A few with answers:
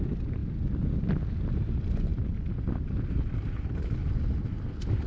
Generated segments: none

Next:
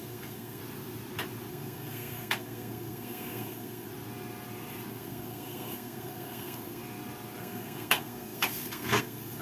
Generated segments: 0.0-0.6; 1.5-3.9; 4.9-6.8; 7.4-9.4

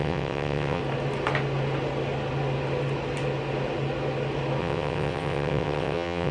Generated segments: 0.0-0.8; 4.6-6.3

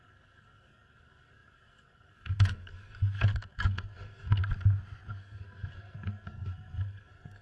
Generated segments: 0.0-4.4; 5.1-7.4

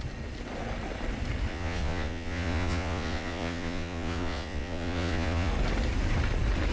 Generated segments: 1.5-5.5